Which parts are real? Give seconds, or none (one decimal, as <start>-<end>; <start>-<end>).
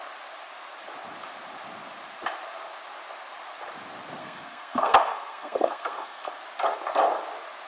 0.0-4.2; 6.4-7.7